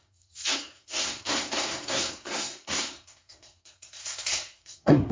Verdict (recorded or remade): remade